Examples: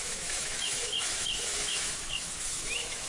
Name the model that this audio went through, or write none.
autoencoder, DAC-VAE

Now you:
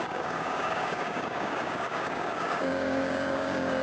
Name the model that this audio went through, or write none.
codec, DAC